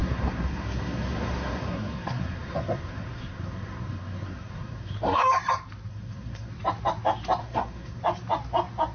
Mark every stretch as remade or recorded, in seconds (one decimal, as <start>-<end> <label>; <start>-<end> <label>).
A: 0.0-5.2 remade; 5.2-5.9 recorded; 5.9-6.5 remade; 6.5-7.4 recorded; 7.4-8.0 remade; 8.0-8.9 recorded